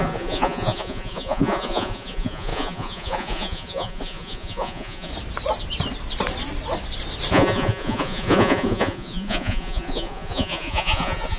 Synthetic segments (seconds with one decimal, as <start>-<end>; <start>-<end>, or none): 0.0-5.1; 7.3-11.4